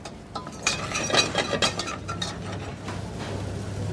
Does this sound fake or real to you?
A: real